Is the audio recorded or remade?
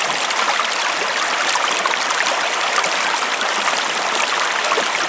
recorded